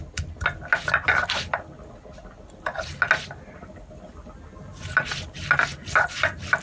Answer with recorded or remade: recorded